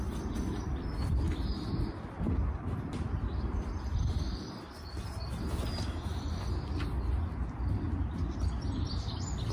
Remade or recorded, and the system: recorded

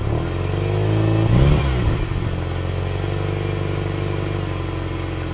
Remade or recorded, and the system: recorded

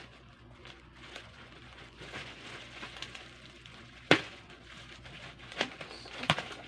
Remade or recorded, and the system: remade, vocoder, Vocos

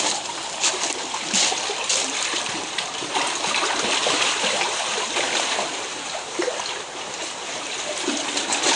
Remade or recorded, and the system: remade, vocoder, BigVGAN v2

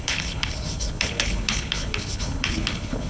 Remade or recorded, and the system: remade, codec, HILCodec